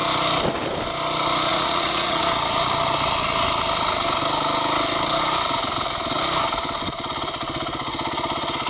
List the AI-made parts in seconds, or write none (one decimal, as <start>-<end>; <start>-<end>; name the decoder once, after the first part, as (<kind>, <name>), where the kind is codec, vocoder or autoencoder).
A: 1.5-2.2 (vocoder, Vocos)